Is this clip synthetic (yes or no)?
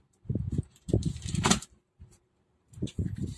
yes